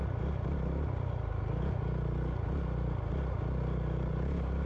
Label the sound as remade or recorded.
recorded